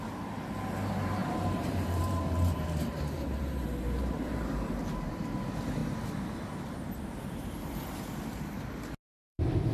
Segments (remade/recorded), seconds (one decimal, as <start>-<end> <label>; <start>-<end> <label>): 0.0-1.2 recorded; 1.2-5.1 remade; 5.1-9.7 recorded